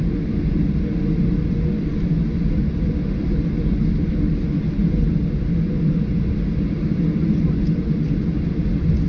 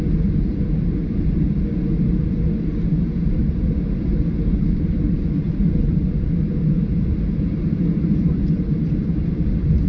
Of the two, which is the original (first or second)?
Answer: first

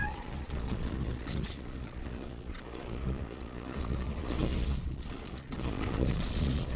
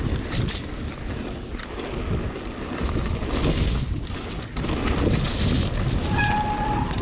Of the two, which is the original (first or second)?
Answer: second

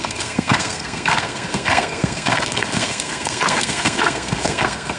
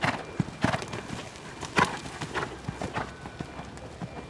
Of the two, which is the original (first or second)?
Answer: second